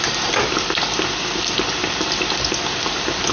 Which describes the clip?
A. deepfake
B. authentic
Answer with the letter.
B